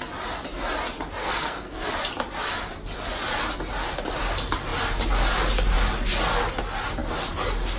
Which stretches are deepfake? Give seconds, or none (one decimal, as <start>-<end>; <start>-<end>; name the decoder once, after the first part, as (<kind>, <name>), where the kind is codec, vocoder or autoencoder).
1.2-1.9 (codec, SNAC)